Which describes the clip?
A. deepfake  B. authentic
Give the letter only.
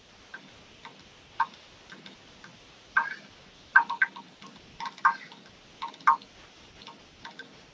B